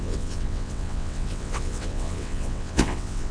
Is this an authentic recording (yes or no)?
no